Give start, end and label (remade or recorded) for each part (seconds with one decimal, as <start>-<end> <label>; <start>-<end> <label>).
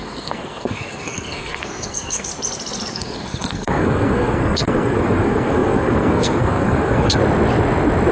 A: 0.0-2.3 remade; 2.3-2.9 recorded; 2.9-7.2 remade; 7.2-8.1 recorded